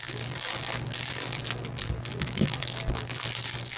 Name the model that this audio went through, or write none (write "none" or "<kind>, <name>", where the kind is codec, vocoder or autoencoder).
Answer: vocoder, BigVGAN v2